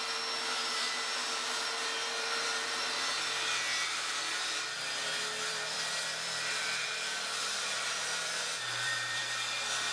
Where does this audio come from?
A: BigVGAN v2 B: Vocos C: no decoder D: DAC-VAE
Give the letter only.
A